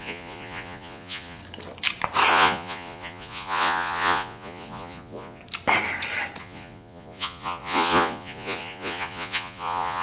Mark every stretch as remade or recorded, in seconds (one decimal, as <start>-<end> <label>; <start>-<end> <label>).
0.0-1.4 remade; 1.4-2.3 recorded; 2.3-5.4 remade; 5.4-6.4 recorded; 6.4-10.0 remade